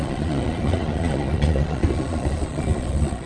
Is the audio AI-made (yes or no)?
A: yes